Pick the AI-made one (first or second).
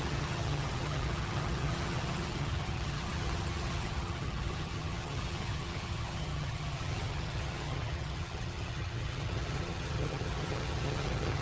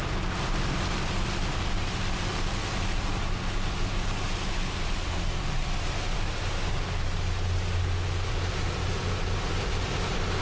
first